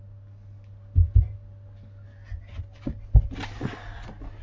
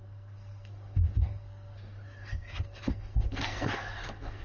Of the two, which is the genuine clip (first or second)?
first